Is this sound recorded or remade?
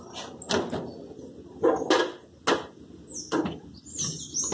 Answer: recorded